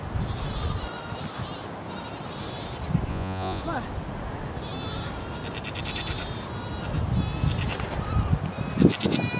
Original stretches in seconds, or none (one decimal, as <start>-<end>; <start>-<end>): 0.0-3.1; 3.6-9.4